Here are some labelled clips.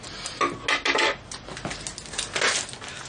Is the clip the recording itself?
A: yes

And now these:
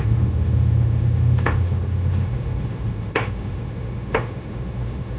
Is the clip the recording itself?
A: no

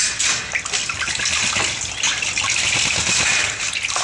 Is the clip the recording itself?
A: yes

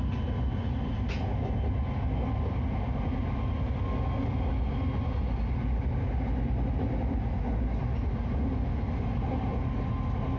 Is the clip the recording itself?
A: yes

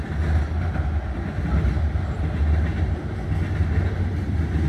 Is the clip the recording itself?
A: yes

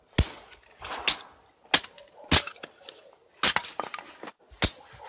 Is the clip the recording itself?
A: yes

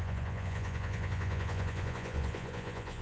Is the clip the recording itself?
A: no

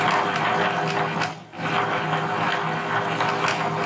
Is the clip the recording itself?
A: yes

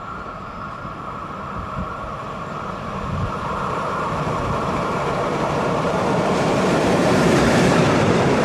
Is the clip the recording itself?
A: no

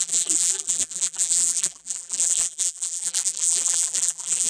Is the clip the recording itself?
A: no